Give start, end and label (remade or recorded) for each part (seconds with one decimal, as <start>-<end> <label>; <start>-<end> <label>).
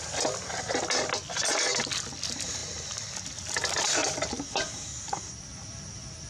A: 0.0-6.3 recorded